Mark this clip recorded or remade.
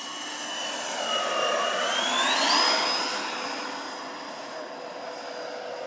recorded